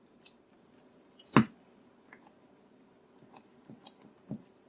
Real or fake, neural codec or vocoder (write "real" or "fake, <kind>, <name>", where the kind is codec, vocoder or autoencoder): real